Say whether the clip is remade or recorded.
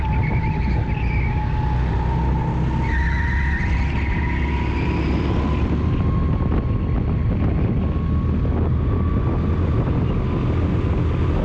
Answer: recorded